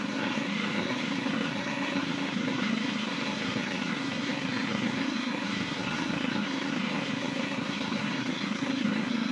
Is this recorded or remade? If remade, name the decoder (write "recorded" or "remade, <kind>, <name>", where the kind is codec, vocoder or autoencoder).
remade, codec, SNAC